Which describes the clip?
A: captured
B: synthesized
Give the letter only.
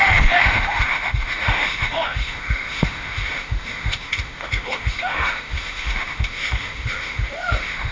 B